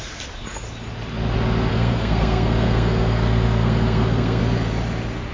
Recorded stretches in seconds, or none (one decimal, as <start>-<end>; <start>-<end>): 0.0-1.7; 4.4-5.3